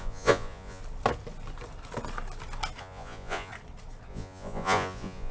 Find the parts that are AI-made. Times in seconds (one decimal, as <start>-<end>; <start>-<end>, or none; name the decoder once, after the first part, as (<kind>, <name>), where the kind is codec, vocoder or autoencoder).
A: 0.0-0.8 (vocoder, Vocos); 2.8-3.5; 4.1-5.3